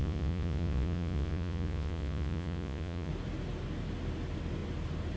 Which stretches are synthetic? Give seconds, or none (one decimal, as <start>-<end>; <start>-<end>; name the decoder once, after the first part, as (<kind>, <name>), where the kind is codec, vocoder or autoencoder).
0.0-3.1 (vocoder, Vocos)